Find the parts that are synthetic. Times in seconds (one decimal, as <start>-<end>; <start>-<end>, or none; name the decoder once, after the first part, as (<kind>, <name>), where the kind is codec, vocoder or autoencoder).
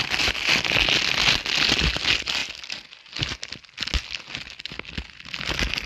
none